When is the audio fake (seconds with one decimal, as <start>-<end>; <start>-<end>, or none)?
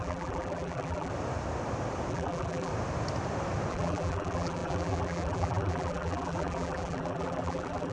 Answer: 0.0-1.1; 2.1-2.7; 3.7-7.9